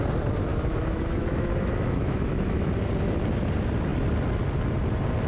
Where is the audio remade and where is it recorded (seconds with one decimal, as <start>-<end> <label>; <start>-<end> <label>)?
0.0-0.5 recorded; 0.5-2.7 remade; 2.7-5.3 recorded